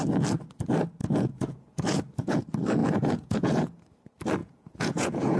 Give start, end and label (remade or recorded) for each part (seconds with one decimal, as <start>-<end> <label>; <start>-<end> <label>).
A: 0.0-1.0 recorded; 1.0-2.4 remade; 2.4-2.8 recorded; 2.8-3.8 remade; 3.8-4.4 recorded; 4.4-5.4 remade